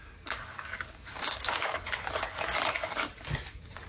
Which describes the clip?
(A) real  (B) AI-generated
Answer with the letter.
B